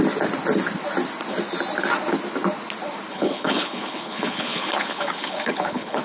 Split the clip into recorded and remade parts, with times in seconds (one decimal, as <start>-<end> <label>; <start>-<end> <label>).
0.0-3.1 recorded; 3.1-6.0 remade